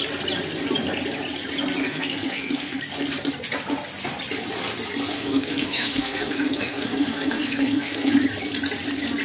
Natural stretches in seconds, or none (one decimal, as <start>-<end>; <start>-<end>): 0.0-1.8; 2.8-5.1; 8.1-9.2